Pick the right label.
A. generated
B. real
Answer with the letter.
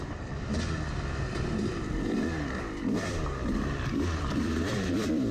A